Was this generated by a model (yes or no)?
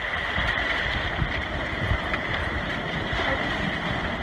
no